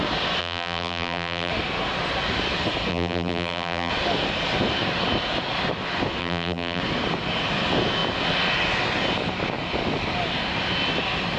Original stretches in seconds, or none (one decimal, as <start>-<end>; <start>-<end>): 0.0-0.4; 1.5-2.9; 3.9-6.2; 6.8-11.4